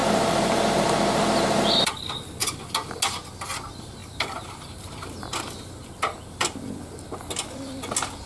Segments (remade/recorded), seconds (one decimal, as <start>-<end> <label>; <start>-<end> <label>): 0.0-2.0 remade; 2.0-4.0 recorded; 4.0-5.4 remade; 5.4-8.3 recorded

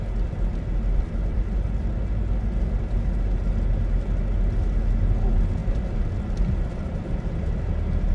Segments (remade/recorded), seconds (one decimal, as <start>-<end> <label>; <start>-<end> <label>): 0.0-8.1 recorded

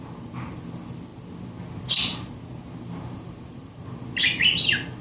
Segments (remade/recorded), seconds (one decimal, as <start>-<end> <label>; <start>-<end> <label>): 0.0-2.1 recorded; 2.1-3.8 remade; 3.8-5.0 recorded

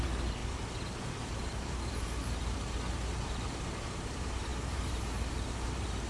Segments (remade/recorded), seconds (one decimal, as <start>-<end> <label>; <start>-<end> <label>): 0.0-0.4 remade; 0.4-1.0 recorded; 1.0-2.2 remade; 2.2-3.8 recorded; 3.8-6.1 remade

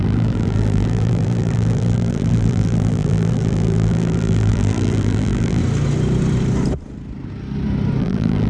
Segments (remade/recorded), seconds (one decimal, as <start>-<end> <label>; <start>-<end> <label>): 0.0-5.6 remade; 5.6-8.0 recorded; 8.0-8.5 remade